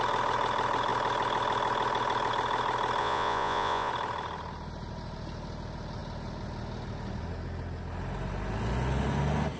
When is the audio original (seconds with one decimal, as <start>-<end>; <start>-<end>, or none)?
0.0-3.0; 3.9-9.6